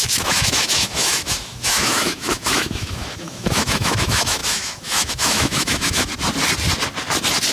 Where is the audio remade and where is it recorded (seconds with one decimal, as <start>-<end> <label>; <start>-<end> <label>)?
0.0-6.1 remade; 6.1-7.5 recorded